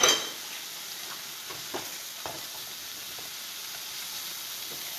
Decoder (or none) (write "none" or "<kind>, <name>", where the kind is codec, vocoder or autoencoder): none